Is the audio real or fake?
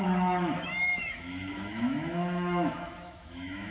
fake